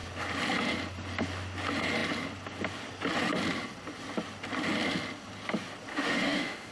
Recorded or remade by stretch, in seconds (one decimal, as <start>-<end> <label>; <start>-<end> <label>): 0.0-5.9 recorded; 5.9-6.7 remade